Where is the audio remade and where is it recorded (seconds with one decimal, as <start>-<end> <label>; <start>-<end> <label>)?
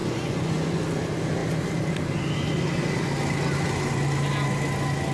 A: 0.0-0.8 remade; 0.8-5.1 recorded